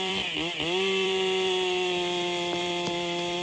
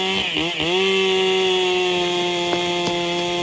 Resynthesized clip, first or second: first